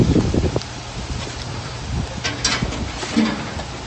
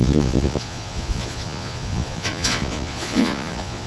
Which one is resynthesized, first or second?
second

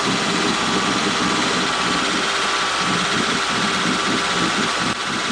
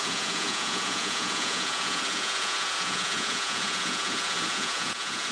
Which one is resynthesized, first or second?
second